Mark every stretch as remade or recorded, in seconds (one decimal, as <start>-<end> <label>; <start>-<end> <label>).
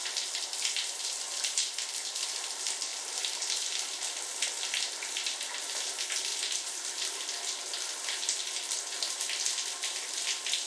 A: 0.0-1.7 remade; 1.7-2.9 recorded; 2.9-4.1 remade; 4.1-6.3 recorded; 6.3-7.1 remade; 7.1-10.7 recorded